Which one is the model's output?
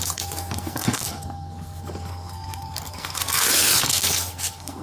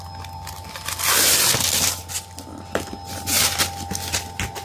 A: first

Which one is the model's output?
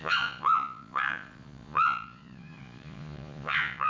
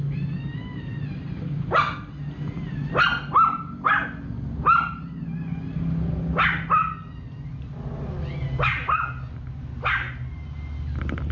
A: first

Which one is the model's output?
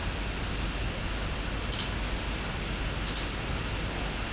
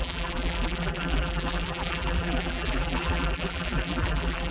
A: second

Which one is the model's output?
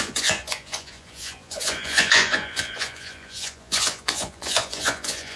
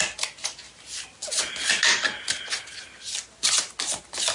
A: first